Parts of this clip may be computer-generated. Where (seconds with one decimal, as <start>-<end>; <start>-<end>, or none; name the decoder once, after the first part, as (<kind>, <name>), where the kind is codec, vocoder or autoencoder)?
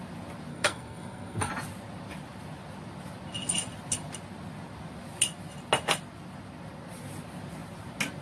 0.5-1.5 (codec, SNAC)